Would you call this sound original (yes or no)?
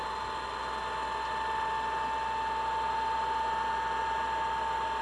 yes